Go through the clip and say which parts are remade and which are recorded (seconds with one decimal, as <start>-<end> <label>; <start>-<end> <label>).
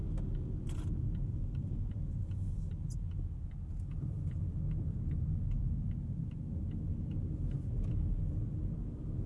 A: 0.0-9.3 recorded